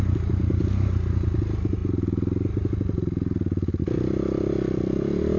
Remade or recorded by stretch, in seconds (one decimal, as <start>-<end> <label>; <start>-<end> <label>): 0.0-5.4 recorded